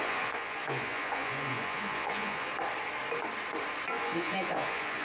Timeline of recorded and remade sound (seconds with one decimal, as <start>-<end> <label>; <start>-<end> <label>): 0.0-2.5 remade; 2.5-3.9 recorded; 3.9-5.0 remade